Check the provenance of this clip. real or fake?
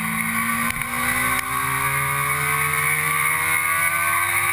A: real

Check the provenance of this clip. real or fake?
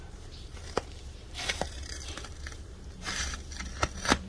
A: fake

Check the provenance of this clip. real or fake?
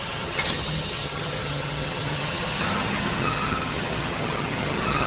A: fake